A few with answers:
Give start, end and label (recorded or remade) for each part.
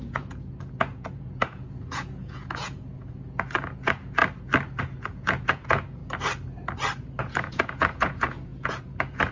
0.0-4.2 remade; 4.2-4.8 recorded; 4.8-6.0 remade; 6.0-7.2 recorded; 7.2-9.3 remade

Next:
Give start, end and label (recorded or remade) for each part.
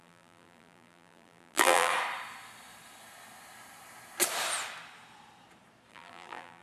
0.0-1.9 remade; 1.9-5.9 recorded; 5.9-6.6 remade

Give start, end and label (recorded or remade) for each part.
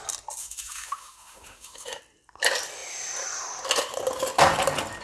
0.0-0.4 recorded; 0.4-2.0 remade; 2.0-5.0 recorded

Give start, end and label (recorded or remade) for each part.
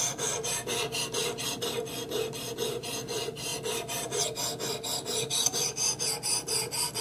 0.0-7.0 recorded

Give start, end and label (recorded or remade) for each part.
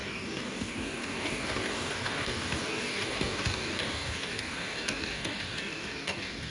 0.0-6.5 remade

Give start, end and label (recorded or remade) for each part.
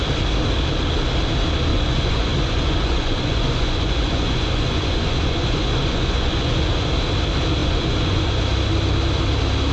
0.0-1.7 recorded; 1.7-6.9 remade; 6.9-7.6 recorded; 7.6-8.4 remade; 8.4-9.7 recorded